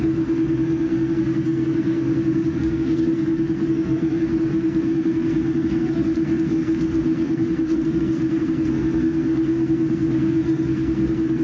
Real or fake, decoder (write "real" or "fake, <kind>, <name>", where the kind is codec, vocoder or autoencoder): fake, codec, SNAC